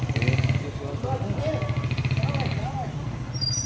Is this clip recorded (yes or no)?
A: yes